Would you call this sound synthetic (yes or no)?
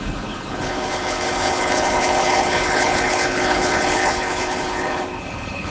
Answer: yes